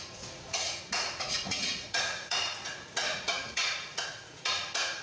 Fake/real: fake